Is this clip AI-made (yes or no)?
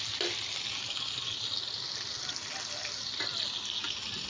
no